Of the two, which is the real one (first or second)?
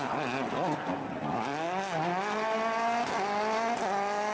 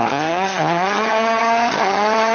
first